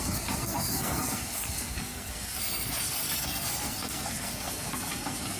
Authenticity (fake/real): fake